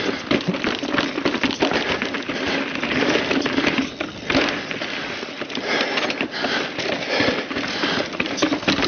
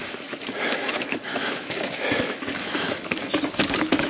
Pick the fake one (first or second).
second